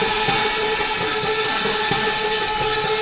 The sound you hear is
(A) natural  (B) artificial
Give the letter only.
A